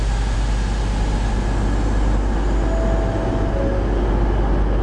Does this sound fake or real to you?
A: real